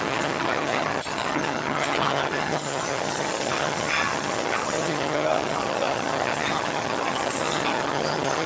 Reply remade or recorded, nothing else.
remade